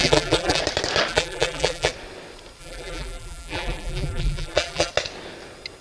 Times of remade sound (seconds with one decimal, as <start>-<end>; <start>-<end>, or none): 0.0-0.6; 1.1-1.9; 2.6-4.9